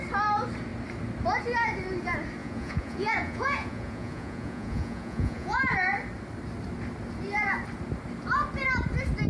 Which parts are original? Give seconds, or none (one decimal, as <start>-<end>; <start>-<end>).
0.0-2.4; 5.6-9.3